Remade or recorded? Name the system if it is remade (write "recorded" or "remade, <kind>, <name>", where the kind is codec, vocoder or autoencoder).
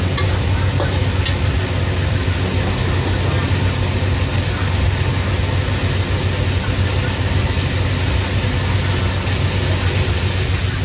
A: recorded